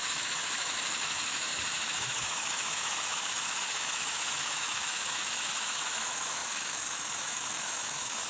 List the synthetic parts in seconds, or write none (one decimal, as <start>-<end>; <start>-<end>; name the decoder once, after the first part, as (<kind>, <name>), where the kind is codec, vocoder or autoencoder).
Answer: 0.0-8.3 (autoencoder, DAC-VAE)